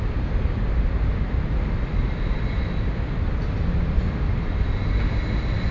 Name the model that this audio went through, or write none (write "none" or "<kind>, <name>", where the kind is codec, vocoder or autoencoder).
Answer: none